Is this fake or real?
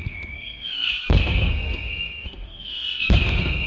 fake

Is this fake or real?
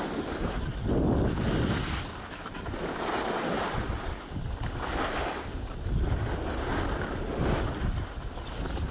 real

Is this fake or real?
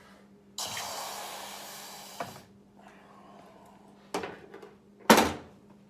real